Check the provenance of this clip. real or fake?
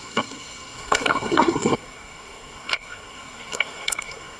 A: fake